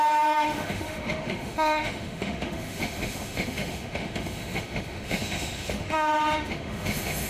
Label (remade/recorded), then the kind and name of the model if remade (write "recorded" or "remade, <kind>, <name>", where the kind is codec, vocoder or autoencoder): remade, autoencoder, DAC-VAE